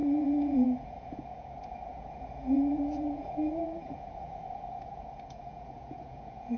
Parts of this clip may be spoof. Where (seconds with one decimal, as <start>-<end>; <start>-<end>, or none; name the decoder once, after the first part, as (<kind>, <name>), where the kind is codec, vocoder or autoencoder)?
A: 0.0-6.6 (vocoder, Vocos)